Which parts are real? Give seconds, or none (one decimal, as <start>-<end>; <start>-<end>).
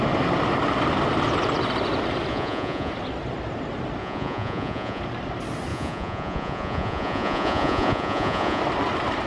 0.0-2.3; 2.9-4.0; 5.0-5.7; 8.6-9.3